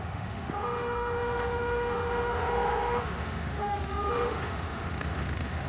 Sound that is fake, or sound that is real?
fake